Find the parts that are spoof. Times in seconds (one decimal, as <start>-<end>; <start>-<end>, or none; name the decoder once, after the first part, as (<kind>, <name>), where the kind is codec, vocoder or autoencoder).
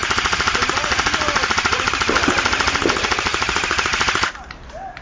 0.0-1.9 (vocoder, BigVGAN v2); 3.3-5.0